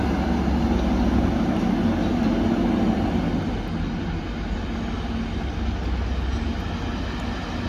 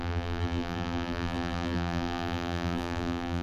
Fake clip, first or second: second